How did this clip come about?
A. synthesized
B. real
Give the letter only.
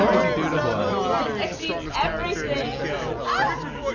B